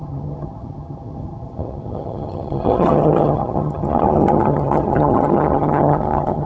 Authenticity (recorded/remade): remade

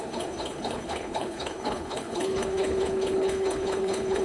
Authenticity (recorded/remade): remade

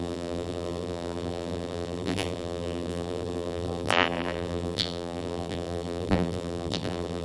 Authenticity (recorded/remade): remade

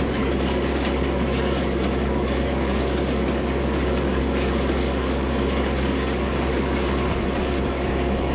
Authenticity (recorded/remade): remade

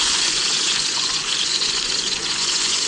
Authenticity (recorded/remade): remade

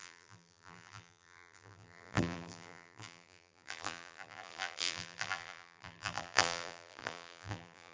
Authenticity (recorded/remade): remade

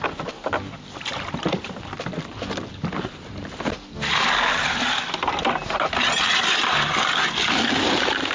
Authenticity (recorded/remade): recorded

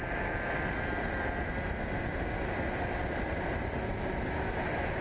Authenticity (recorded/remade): recorded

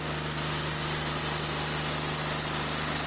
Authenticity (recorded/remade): recorded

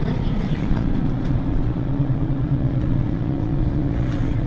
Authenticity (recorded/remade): remade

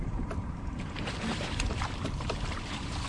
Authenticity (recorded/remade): remade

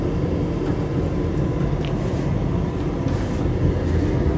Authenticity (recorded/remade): recorded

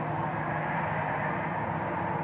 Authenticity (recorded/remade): recorded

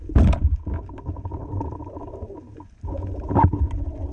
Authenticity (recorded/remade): recorded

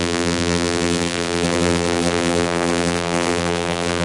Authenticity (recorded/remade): remade